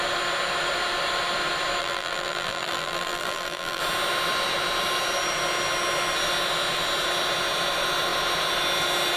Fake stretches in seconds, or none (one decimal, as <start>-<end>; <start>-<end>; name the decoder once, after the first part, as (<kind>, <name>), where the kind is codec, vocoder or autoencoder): 1.8-3.8 (vocoder, BigVGAN v2)